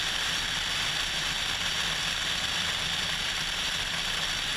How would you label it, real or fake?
fake